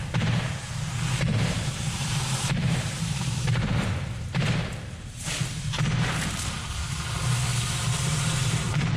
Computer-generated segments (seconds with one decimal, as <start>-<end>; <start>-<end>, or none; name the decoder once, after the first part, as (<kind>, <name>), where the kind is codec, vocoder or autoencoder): 0.0-7.5 (vocoder, BigVGAN v2); 8.2-9.0